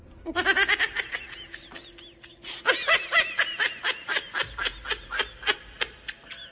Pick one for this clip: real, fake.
real